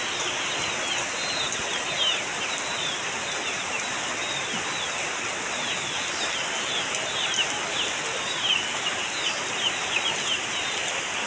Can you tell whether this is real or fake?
real